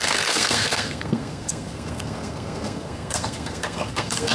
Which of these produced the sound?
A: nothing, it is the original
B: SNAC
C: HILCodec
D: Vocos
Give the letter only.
B